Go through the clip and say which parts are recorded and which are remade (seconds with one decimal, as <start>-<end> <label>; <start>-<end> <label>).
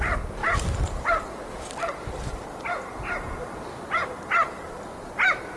0.0-5.6 remade